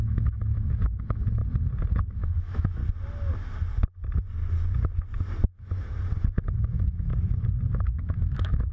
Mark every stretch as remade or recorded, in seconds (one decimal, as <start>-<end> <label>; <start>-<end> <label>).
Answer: 0.0-1.4 remade; 1.4-2.1 recorded; 2.1-2.8 remade; 2.8-6.4 recorded; 6.4-7.1 remade; 7.1-7.8 recorded; 7.8-8.7 remade